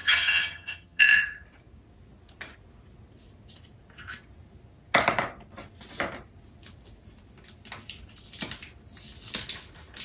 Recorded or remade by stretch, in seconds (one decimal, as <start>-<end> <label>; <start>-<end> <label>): 0.0-1.0 remade; 1.0-10.0 recorded